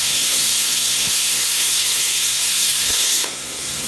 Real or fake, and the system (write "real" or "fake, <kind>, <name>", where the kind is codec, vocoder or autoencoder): fake, codec, SNAC